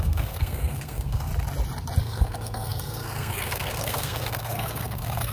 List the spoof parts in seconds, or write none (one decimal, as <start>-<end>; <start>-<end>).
0.0-1.3; 2.0-5.3